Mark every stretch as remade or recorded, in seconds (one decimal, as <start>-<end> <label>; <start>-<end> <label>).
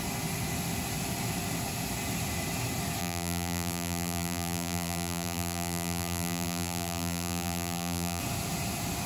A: 0.0-3.0 recorded; 3.0-8.2 remade; 8.2-9.1 recorded